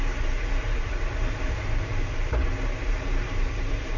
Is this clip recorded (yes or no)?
no